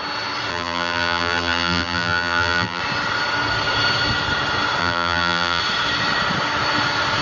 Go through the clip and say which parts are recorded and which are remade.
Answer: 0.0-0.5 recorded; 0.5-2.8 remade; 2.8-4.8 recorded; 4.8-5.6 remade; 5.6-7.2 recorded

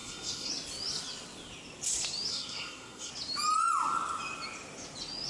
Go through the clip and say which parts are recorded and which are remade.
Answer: 0.0-0.5 remade; 0.5-2.3 recorded; 2.3-3.1 remade; 3.1-5.3 recorded